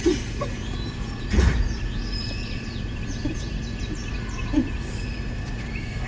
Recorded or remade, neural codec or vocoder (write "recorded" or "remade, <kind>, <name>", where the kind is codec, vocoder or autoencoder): remade, vocoder, Vocos